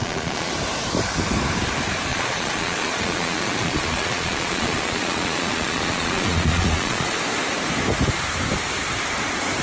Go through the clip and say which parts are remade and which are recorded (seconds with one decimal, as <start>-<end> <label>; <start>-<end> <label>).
0.0-0.5 remade; 0.5-2.1 recorded; 2.1-7.2 remade; 7.2-9.6 recorded